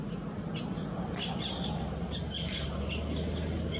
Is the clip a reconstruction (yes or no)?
no